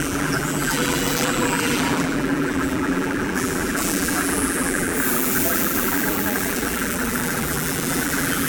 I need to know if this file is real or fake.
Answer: fake